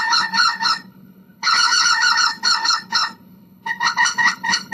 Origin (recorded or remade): remade